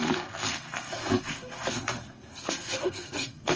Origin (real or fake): fake